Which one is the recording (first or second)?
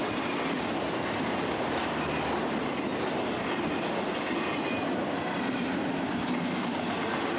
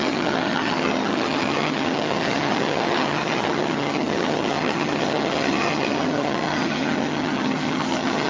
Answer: first